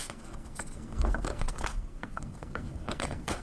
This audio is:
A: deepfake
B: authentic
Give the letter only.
A